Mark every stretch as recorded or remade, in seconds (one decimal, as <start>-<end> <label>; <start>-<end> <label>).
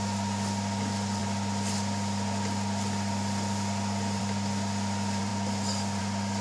0.0-6.4 recorded